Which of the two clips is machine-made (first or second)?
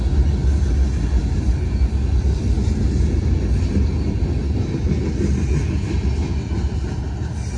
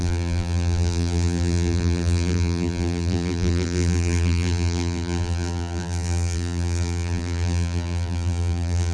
second